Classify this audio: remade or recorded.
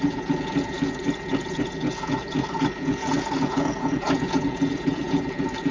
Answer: remade